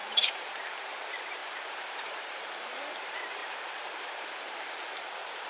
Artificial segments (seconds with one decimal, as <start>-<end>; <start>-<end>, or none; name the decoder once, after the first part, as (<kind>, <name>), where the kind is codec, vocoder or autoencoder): 0.0-5.5 (vocoder, BigVGAN v2)